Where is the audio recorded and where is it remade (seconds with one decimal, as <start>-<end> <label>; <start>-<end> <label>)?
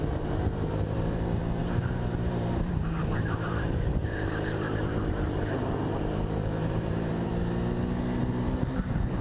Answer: 0.0-7.3 remade; 7.3-8.2 recorded; 8.2-9.2 remade